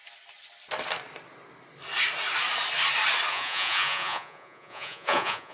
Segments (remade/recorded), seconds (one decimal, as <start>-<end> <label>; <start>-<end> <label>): 0.0-3.3 recorded; 3.3-5.5 remade